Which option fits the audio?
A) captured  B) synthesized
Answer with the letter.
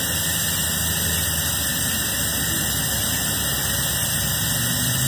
A